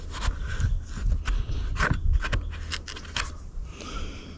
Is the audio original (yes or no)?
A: yes